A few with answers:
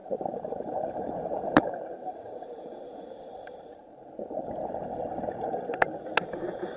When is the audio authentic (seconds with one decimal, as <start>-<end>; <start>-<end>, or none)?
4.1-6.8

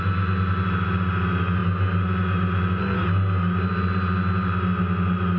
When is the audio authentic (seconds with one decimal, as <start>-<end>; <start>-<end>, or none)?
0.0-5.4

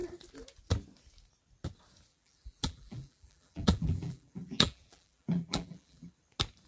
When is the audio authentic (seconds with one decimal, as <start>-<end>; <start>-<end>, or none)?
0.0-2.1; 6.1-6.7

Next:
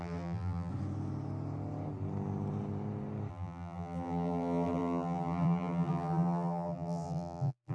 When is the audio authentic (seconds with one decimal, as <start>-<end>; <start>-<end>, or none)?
0.7-3.3

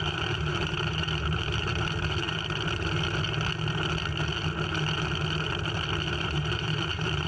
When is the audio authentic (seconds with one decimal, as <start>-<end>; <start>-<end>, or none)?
1.7-6.1

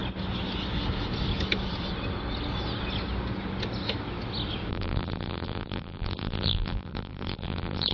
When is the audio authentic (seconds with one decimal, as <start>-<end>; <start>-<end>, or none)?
0.0-4.7

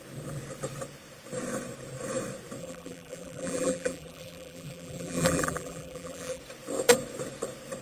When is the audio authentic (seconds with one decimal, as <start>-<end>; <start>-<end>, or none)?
0.0-2.6; 6.4-7.8

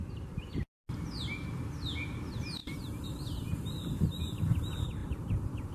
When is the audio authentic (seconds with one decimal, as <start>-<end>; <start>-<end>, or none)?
0.0-2.6; 4.2-5.0